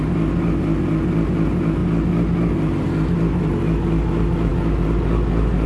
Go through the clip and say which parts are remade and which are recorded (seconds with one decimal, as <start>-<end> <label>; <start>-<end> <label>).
0.0-5.7 recorded